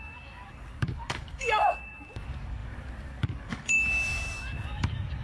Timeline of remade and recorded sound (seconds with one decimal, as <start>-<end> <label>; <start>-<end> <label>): 0.0-5.2 remade